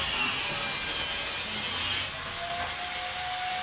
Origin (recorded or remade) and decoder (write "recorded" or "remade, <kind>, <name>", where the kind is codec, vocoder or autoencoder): recorded